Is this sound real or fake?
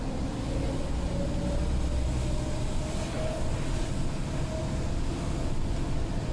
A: real